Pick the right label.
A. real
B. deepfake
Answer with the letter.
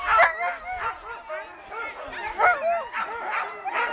A